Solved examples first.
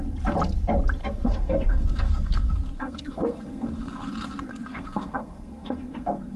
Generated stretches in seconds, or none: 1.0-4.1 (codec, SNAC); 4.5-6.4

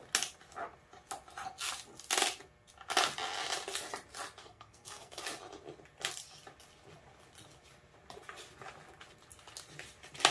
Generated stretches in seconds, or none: 4.4-5.2 (codec, SNAC)

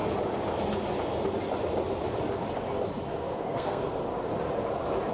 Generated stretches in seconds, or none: 3.1-4.0 (codec, SNAC)

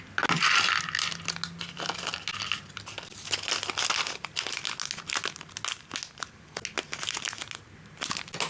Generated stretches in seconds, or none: none